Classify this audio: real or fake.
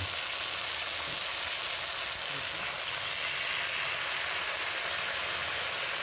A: real